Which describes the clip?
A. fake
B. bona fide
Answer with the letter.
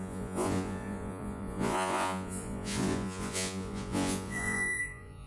A